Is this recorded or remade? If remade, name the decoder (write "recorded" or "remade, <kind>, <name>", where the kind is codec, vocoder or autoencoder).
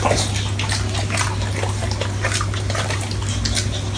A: recorded